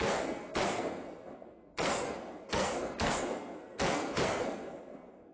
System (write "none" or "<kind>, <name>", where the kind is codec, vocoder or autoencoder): codec, SNAC